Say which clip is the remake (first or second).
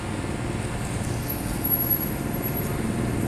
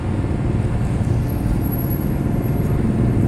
second